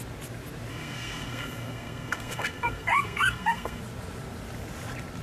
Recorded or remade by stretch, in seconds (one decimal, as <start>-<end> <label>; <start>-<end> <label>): 0.0-0.7 recorded; 0.7-3.8 remade; 3.8-5.2 recorded